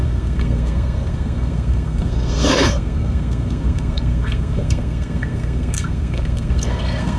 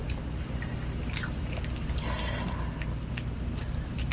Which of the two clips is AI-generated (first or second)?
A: first